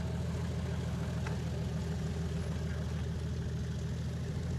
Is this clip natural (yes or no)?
yes